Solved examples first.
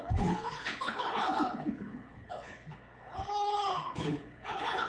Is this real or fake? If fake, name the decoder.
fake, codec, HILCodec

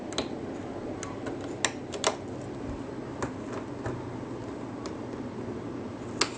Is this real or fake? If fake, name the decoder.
real